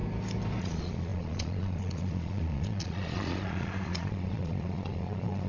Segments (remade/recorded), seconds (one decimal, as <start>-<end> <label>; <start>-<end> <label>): 0.0-0.6 recorded; 0.6-5.5 remade